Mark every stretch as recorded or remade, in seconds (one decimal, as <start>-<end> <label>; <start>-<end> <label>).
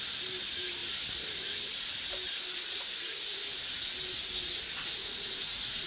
0.0-5.0 recorded; 5.0-5.9 remade